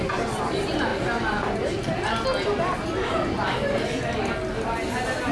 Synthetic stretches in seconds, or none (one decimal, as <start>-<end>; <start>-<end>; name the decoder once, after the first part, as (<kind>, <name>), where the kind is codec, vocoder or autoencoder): none